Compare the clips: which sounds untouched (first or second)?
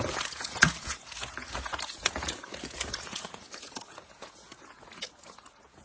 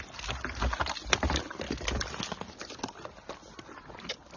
second